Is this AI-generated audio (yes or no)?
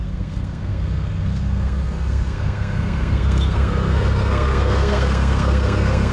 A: yes